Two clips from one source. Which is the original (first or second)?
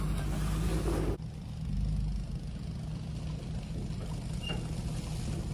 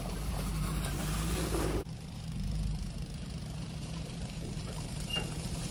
first